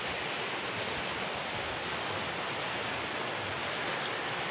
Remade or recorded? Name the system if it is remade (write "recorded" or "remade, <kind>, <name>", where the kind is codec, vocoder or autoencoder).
recorded